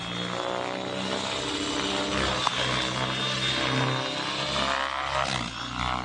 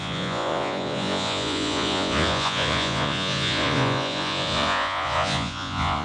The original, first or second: first